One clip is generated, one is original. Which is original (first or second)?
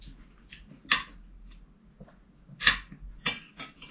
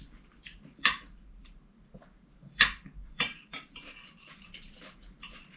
first